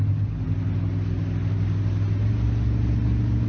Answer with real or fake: real